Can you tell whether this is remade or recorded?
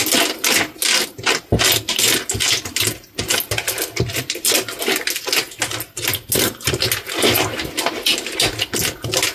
recorded